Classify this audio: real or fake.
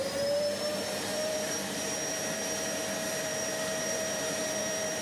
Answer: fake